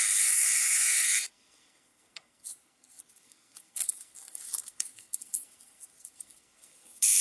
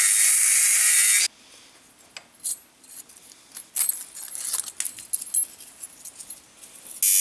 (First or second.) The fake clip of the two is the first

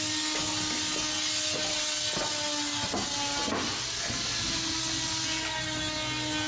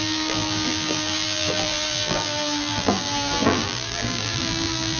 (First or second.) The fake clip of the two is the second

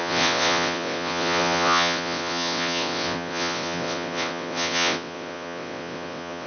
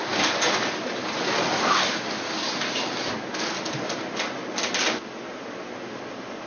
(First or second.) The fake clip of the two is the first